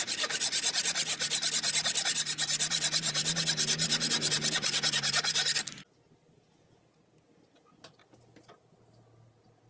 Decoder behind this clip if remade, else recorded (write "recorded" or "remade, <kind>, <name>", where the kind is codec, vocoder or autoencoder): recorded